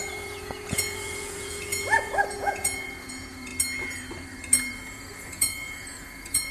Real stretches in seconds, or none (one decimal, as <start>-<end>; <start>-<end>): 3.5-4.7

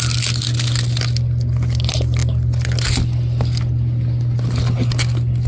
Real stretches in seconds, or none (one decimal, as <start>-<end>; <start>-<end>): 0.0-5.5

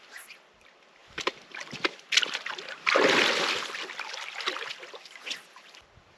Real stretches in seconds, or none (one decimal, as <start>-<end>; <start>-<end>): none

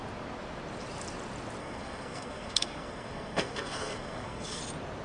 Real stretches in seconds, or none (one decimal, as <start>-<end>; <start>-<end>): 0.0-1.6; 4.6-5.0

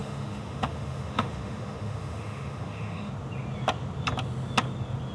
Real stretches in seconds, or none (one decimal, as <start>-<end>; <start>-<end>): 3.1-5.1